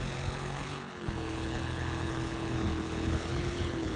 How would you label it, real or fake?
fake